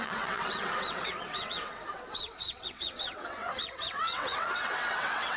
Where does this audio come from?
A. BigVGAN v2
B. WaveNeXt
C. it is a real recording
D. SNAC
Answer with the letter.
B